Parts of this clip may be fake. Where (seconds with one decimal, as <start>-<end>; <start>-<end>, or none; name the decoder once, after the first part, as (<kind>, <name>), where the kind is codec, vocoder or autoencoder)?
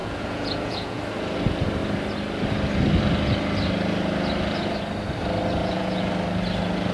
0.0-1.0 (vocoder, Vocos); 5.6-6.1